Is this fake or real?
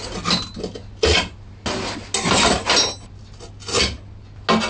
real